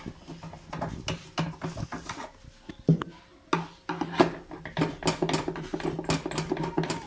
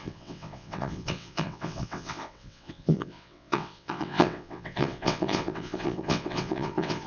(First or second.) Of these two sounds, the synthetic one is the second